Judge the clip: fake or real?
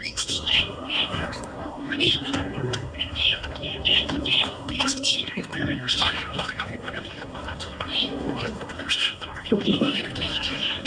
fake